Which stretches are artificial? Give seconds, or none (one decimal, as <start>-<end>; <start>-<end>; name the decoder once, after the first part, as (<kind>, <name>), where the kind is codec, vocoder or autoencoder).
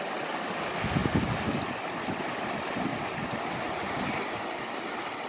2.9-4.1 (vocoder, BigVGAN v2)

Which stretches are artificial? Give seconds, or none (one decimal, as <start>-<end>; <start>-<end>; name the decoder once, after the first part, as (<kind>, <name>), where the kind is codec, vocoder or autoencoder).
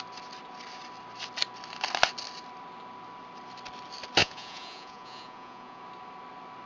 4.2-5.8 (vocoder, Vocos)